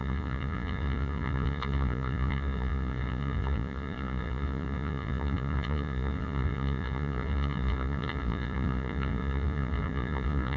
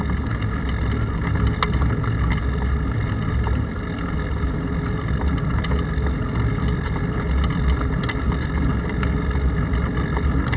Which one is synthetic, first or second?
first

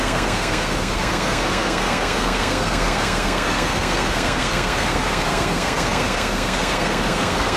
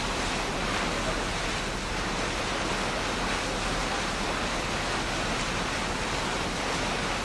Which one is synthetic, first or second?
first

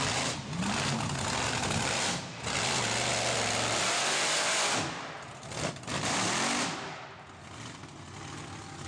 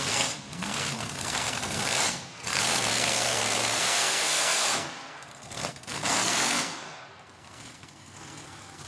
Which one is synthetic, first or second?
second